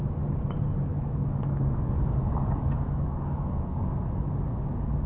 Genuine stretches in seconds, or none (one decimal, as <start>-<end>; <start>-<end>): 0.0-0.9; 4.0-5.1